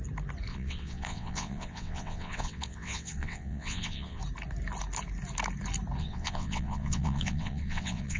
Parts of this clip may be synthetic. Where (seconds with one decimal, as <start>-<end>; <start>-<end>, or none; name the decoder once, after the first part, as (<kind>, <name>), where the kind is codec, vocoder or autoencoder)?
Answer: 0.5-4.2 (vocoder, WaveNeXt); 6.0-8.2

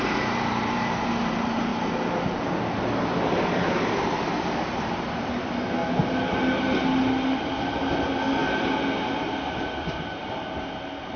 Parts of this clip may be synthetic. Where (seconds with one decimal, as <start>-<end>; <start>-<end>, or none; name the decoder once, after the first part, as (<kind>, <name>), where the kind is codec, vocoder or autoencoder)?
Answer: 0.0-1.7 (vocoder, BigVGAN v2); 3.3-5.8; 10.3-11.2

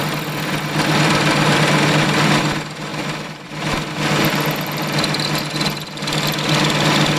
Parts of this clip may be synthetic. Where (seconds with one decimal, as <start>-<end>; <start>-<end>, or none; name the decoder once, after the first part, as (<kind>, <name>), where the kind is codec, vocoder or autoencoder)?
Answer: 2.9-3.9 (vocoder, BigVGAN v2)